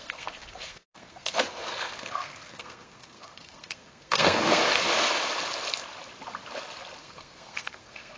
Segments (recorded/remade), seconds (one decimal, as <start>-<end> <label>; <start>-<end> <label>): 0.0-4.6 remade; 4.6-7.0 recorded; 7.0-8.2 remade